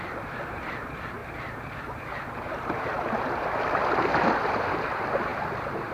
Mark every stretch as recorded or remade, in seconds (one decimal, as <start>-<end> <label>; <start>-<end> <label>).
0.0-1.2 remade; 1.2-4.4 recorded; 4.4-5.3 remade; 5.3-5.9 recorded